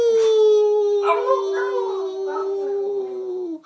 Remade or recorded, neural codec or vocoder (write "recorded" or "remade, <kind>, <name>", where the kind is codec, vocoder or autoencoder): recorded